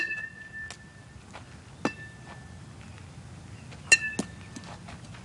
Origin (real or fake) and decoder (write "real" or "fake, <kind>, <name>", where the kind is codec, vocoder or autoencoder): real